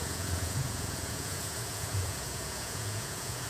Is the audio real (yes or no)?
no